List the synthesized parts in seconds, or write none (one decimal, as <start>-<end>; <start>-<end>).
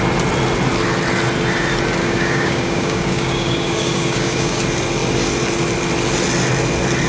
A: 2.0-4.6